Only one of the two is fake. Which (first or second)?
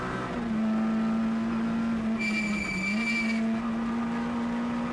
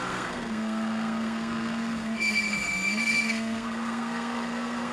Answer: second